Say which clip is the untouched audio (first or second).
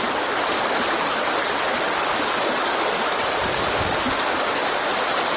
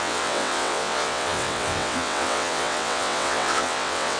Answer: first